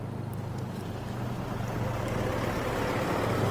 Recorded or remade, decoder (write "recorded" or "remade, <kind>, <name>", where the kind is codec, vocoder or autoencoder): recorded